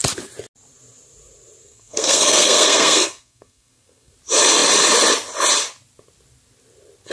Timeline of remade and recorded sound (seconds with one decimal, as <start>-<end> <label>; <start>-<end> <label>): 0.0-1.6 recorded; 1.6-4.1 remade; 4.1-7.1 recorded